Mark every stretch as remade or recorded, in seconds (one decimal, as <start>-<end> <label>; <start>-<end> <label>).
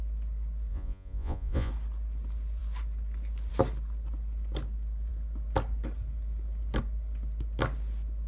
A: 0.0-0.7 recorded; 0.7-1.7 remade; 1.7-8.3 recorded